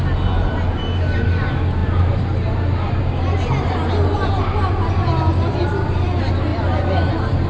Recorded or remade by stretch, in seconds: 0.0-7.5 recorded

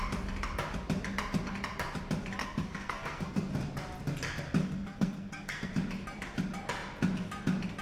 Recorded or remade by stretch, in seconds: 0.0-2.4 recorded; 2.4-3.5 remade; 3.5-4.6 recorded; 4.6-5.7 remade; 5.7-7.8 recorded

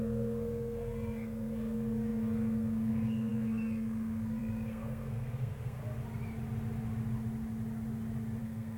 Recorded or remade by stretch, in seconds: 0.0-5.8 remade; 5.8-8.4 recorded; 8.4-8.8 remade

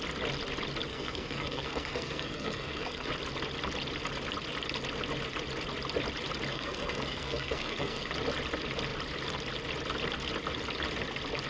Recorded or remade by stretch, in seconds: 0.0-0.9 recorded; 0.9-3.1 remade; 3.1-6.5 recorded; 6.5-8.1 remade; 8.1-11.5 recorded

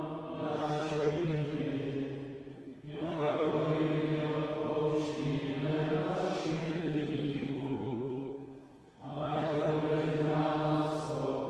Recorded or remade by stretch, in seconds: 0.0-0.6 recorded; 0.6-1.6 remade; 1.6-2.5 recorded; 2.5-3.5 remade; 3.5-6.6 recorded; 6.6-9.7 remade; 9.7-11.5 recorded

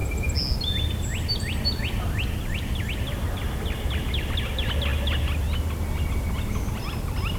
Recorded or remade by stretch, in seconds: 0.0-7.4 recorded

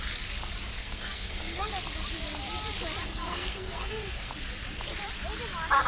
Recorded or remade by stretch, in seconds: 0.0-0.8 recorded; 0.8-1.7 remade; 1.7-3.0 recorded; 3.0-4.3 remade; 4.3-5.9 recorded

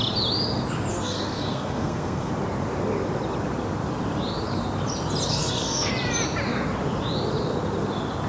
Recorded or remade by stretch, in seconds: 0.0-0.9 recorded; 0.9-2.3 remade; 2.3-5.3 recorded; 5.3-5.9 remade; 5.9-8.3 recorded